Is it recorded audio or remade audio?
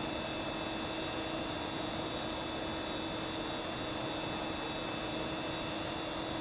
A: recorded